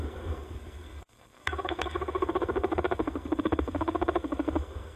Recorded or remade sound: remade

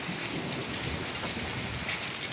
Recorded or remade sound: recorded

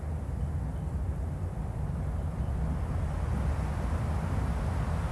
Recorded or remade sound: recorded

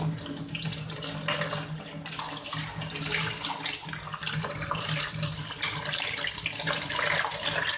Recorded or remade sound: recorded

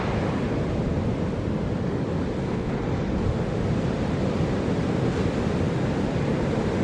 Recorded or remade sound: recorded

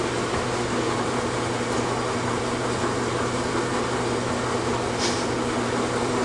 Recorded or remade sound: recorded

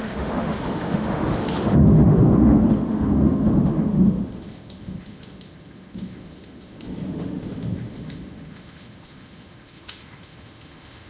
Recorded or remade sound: remade